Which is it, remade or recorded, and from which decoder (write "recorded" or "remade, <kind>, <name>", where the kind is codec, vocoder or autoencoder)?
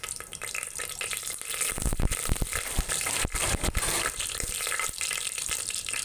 recorded